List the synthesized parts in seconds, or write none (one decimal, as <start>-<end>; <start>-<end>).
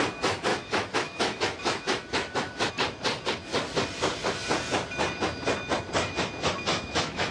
0.5-2.7; 6.7-7.3